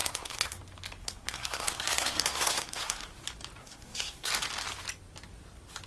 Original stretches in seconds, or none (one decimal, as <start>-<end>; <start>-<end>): 0.6-1.0; 3.1-3.6; 4.3-5.9